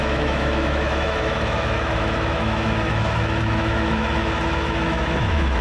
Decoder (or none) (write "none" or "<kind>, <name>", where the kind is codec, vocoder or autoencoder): autoencoder, DAC-VAE